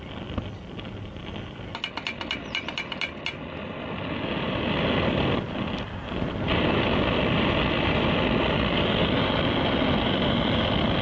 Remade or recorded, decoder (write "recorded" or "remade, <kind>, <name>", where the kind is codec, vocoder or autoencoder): recorded